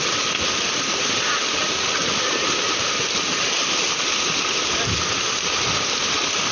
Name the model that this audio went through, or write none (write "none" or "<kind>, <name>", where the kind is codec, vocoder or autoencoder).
none